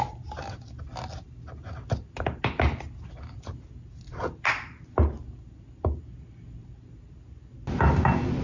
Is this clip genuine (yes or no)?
yes